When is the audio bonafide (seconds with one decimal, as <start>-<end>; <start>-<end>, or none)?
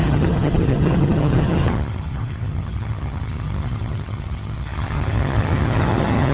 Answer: none